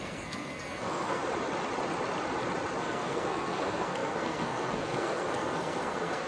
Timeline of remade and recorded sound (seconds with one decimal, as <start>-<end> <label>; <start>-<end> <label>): 0.0-1.2 remade; 1.2-2.8 recorded; 2.8-6.3 remade